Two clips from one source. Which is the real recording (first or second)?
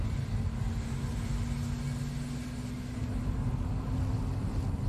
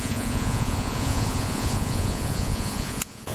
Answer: first